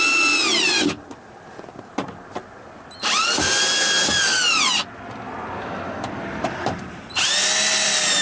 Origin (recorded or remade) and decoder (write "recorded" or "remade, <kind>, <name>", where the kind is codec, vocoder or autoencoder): recorded